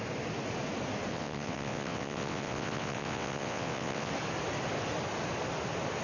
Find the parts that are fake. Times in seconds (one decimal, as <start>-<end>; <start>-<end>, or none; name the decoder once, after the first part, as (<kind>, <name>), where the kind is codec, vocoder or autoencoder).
1.1-4.1 (vocoder, WaveNeXt)